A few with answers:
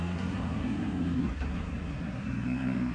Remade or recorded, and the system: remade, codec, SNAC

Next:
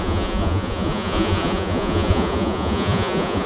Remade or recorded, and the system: remade, vocoder, Vocos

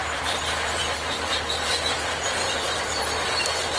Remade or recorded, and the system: remade, vocoder, BigVGAN v2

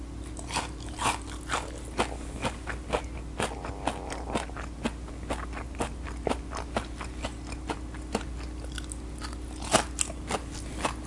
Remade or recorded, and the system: recorded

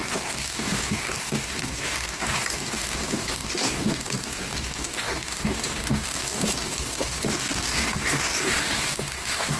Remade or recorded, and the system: remade, codec, DAC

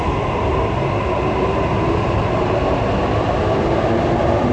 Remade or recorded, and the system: recorded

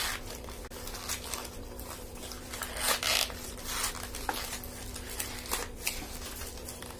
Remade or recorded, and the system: recorded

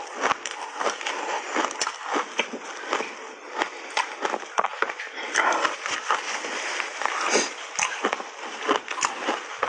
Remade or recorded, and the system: recorded